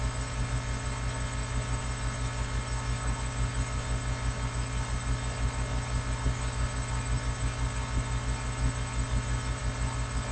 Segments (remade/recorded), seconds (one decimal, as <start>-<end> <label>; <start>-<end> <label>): 0.0-10.3 recorded